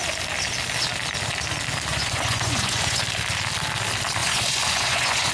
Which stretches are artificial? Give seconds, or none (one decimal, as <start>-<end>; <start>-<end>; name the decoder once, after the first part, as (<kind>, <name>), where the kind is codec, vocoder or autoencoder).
1.9-3.0 (vocoder, Vocos); 4.2-5.3